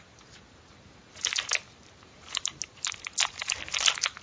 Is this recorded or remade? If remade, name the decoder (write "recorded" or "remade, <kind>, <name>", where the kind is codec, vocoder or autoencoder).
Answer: recorded